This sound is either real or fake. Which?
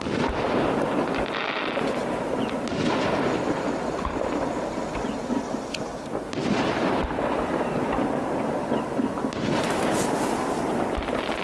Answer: real